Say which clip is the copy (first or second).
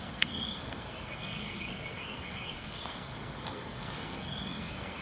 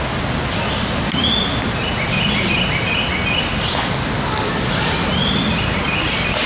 first